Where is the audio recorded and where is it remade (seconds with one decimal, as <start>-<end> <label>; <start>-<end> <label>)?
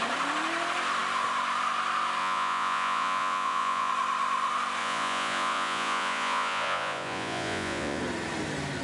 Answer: 0.0-2.2 recorded; 2.2-3.9 remade; 3.9-4.8 recorded; 4.8-8.0 remade; 8.0-8.8 recorded